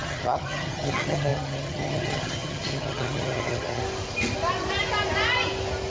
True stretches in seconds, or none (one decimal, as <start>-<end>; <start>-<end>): 3.8-5.9